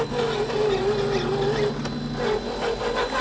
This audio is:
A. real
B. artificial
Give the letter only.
A